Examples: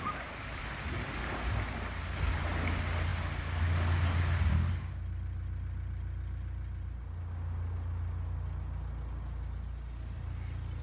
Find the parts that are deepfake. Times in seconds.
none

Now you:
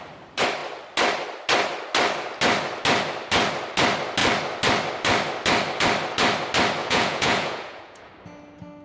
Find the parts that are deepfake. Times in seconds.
6.8-8.1 (vocoder, Vocos)

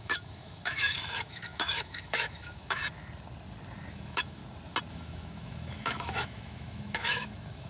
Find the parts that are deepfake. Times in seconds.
0.0-2.8 (autoencoder, DAC-VAE); 3.9-4.4; 4.9-7.7